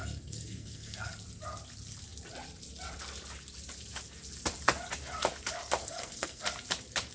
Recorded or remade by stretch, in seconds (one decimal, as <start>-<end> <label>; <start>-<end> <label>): 0.0-1.1 remade; 1.1-5.8 recorded; 5.8-6.4 remade; 6.4-7.1 recorded